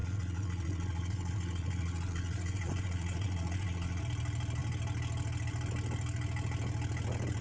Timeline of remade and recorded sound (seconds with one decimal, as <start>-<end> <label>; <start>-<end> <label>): 0.0-4.0 remade; 4.0-7.4 recorded